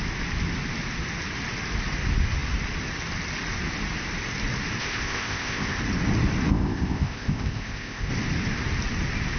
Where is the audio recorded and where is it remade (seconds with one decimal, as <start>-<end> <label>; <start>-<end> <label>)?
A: 0.0-4.8 recorded; 4.8-5.8 remade; 5.8-6.5 recorded; 6.5-8.1 remade; 8.1-9.4 recorded